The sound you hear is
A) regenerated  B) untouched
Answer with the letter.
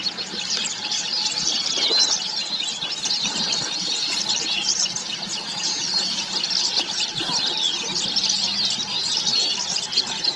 B